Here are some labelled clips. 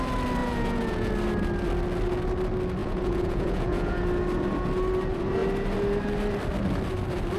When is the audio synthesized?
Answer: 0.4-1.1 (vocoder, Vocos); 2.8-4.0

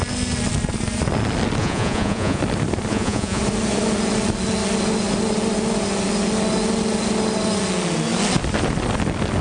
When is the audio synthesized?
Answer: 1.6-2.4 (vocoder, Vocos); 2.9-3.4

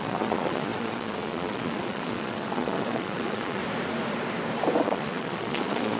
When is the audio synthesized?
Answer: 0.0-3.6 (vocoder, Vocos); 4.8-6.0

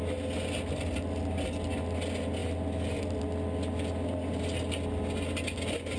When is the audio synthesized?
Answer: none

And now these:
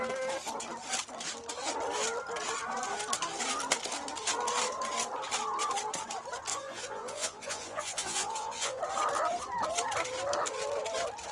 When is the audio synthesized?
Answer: 6.5-8.8 (vocoder, Vocos)